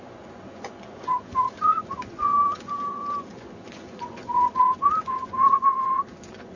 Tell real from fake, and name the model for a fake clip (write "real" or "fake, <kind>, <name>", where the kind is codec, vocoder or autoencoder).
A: fake, vocoder, Vocos